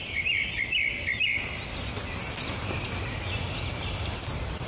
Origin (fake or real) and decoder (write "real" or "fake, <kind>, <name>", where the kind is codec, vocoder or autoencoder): real